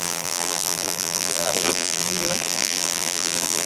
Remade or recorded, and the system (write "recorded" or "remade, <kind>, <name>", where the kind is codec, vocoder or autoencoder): remade, vocoder, BigVGAN v2